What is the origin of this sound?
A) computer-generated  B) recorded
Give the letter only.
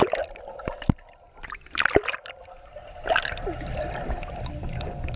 A